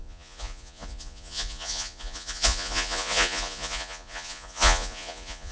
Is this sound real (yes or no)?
no